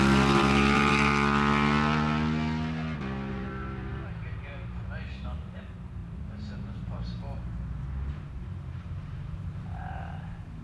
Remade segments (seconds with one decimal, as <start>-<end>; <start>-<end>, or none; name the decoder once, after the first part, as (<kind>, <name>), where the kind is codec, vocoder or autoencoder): 0.0-1.1 (vocoder, BigVGAN v2); 3.3-10.6